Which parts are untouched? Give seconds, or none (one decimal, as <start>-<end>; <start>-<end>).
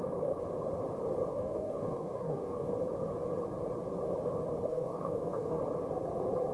0.0-1.3; 2.7-4.7; 5.6-6.5